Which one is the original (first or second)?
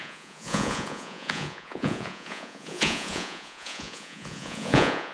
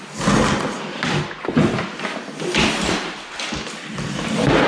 second